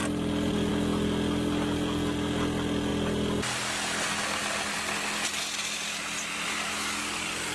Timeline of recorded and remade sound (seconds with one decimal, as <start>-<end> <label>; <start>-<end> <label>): 0.0-7.5 recorded